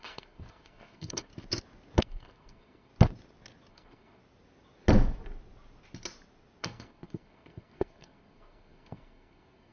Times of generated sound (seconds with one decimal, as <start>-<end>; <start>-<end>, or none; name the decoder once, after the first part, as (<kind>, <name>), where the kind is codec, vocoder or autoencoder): 0.0-1.3 (codec, SNAC); 2.0-2.9; 3.7-4.2; 6.6-9.7